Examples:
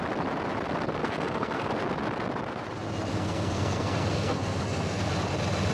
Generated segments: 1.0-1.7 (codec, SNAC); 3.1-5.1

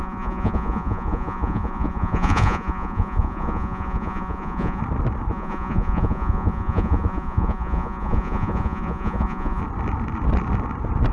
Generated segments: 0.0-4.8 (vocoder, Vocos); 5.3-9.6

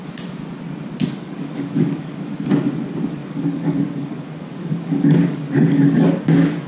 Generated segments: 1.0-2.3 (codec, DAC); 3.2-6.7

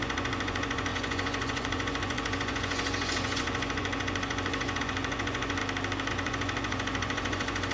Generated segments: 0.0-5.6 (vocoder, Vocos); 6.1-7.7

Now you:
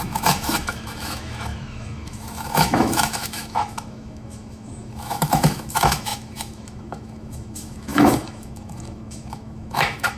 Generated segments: 0.0-10.2 (autoencoder, DAC-VAE)